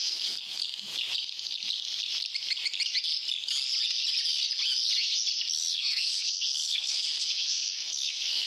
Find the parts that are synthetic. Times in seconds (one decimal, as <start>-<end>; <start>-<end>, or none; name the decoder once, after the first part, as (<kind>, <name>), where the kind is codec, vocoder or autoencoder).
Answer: 0.0-0.6 (codec, SNAC); 5.7-8.5